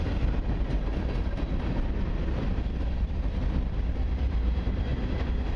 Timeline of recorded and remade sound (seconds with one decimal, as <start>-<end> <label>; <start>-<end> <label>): 0.0-0.9 remade; 0.9-4.3 recorded; 4.3-4.9 remade; 4.9-5.6 recorded